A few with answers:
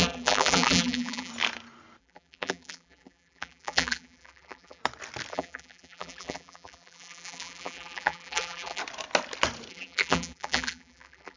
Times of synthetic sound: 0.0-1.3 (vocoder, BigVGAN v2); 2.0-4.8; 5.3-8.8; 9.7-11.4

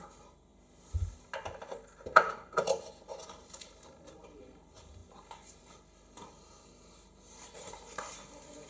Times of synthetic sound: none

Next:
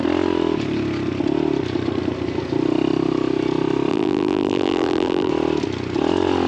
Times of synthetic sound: 3.9-5.3 (vocoder, BigVGAN v2)

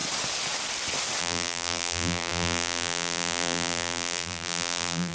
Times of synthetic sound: 1.2-5.1 (vocoder, BigVGAN v2)

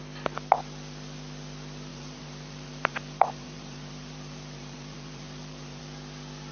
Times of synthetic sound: 1.9-5.8 (vocoder, BigVGAN v2)

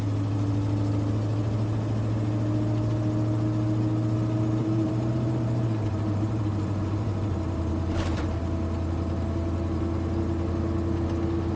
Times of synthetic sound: 4.6-8.4 (vocoder, BigVGAN v2)